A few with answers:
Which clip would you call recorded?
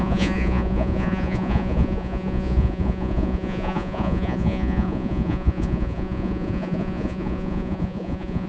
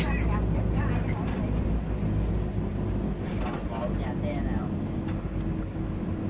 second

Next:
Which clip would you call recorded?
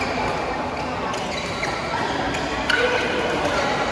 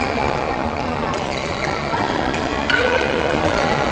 first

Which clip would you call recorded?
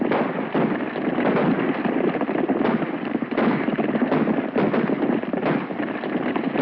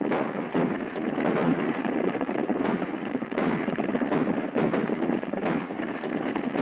first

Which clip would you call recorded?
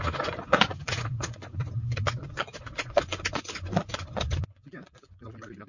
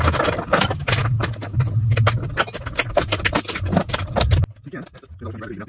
second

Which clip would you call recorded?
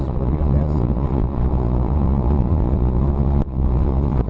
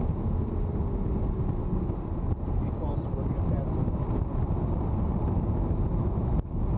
second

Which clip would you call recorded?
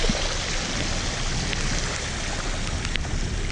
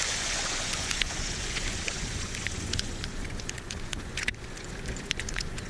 first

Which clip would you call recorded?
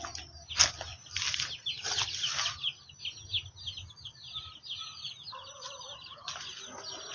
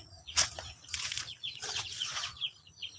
first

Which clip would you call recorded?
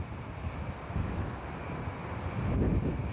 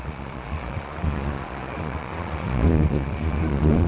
first